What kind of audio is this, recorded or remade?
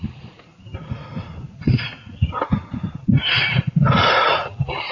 recorded